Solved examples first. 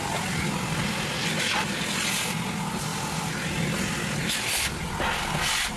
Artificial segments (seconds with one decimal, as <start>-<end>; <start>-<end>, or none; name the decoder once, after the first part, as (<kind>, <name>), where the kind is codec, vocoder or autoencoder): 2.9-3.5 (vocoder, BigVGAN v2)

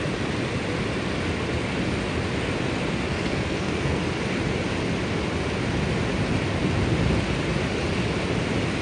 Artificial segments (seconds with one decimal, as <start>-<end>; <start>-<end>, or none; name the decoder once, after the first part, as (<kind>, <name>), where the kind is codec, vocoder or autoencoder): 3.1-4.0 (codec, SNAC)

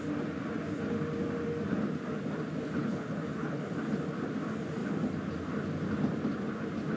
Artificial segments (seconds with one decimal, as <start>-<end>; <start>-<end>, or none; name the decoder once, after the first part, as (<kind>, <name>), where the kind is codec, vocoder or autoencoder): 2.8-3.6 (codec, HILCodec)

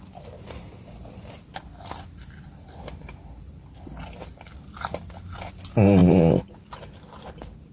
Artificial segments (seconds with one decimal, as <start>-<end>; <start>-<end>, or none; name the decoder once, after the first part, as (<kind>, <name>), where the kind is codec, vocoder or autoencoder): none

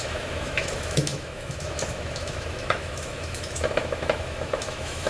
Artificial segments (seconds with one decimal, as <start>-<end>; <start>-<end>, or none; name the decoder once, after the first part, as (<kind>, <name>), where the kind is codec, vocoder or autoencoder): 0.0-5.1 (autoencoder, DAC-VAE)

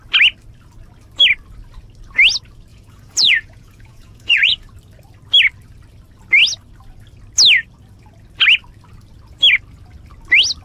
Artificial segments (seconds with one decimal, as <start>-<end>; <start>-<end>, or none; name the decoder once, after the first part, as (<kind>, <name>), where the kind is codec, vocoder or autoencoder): 2.7-4.7 (vocoder, Vocos)